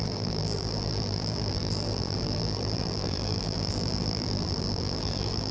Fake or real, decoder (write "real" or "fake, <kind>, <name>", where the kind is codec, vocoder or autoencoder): fake, vocoder, BigVGAN v2